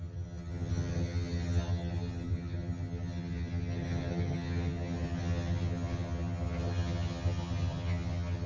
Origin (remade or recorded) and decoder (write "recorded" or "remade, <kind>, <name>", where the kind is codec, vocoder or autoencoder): remade, vocoder, HiFi-GAN